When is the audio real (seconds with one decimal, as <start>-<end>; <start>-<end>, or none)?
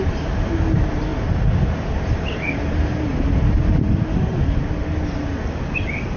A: 0.0-6.2